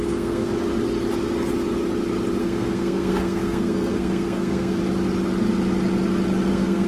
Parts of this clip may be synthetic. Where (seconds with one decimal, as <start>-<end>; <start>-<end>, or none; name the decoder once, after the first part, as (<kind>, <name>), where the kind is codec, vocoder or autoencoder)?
0.0-0.5 (codec, SNAC); 2.4-4.8; 6.5-6.9